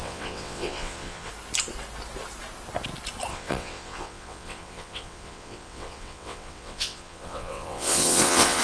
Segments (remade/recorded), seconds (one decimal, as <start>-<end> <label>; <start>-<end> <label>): 0.0-1.3 remade; 1.3-3.3 recorded; 3.3-8.6 remade